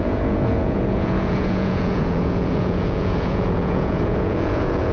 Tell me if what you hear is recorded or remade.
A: remade